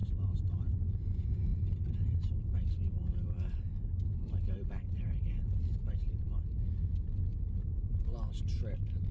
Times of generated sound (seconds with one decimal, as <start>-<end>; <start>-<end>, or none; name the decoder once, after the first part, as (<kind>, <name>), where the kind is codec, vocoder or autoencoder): 1.5-6.7 (vocoder, BigVGAN v2); 7.3-8.3